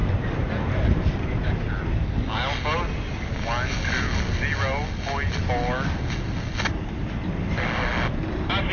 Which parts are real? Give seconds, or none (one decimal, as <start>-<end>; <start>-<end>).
1.4-8.7